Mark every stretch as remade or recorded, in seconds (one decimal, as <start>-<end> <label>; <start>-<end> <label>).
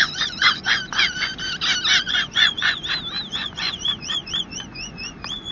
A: 0.0-1.3 remade; 1.3-2.0 recorded; 2.0-2.8 remade; 2.8-3.3 recorded; 3.3-5.5 remade